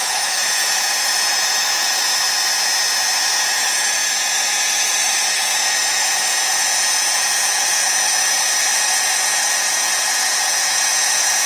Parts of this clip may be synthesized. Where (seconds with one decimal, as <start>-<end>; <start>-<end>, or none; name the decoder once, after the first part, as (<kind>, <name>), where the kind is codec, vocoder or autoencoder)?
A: 0.0-2.0 (vocoder, Vocos); 3.4-11.5